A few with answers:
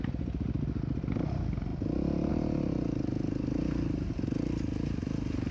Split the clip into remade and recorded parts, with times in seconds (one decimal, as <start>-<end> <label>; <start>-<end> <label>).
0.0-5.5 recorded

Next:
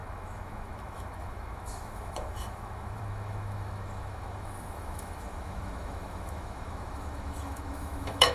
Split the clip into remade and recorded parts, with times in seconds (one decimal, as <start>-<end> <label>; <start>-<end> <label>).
0.0-8.3 remade

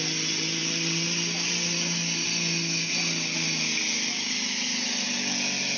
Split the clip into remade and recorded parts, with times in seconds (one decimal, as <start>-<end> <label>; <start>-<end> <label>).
0.0-5.8 recorded